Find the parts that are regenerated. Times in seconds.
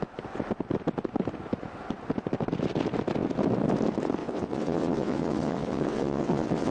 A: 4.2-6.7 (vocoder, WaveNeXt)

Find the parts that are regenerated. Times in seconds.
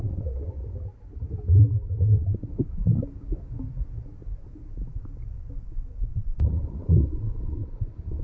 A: 0.0-0.6 (vocoder, WaveNeXt); 2.0-2.8; 6.0-8.2